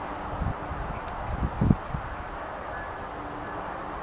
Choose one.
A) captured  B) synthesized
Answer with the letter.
A